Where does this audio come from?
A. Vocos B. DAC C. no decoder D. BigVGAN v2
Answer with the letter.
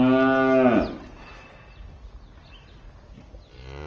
C